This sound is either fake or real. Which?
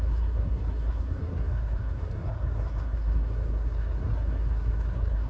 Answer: fake